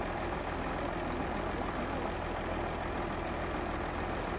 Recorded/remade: recorded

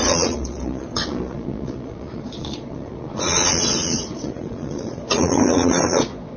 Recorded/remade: remade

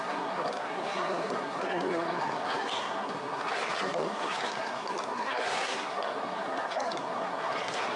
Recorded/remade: remade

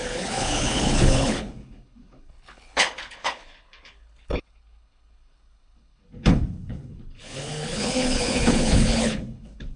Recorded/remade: remade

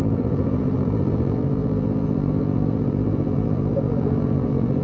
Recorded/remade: remade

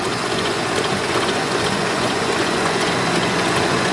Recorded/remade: remade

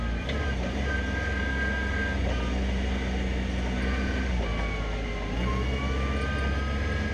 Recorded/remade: recorded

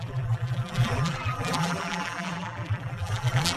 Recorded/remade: remade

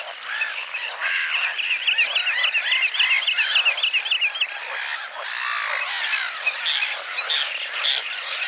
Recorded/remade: recorded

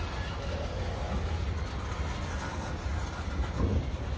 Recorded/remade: recorded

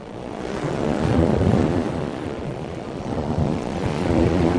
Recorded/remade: remade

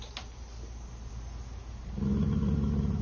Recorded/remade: recorded